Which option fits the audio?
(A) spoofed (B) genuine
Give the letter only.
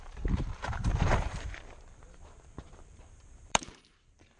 A